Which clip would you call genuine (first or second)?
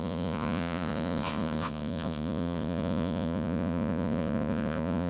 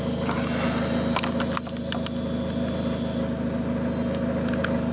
second